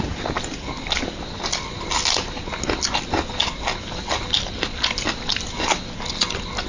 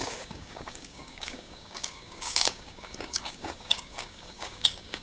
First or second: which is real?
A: first